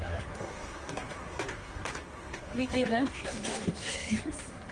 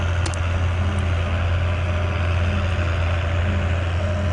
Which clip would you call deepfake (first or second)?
first